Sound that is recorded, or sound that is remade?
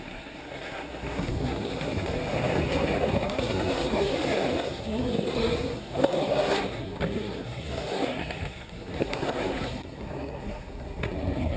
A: remade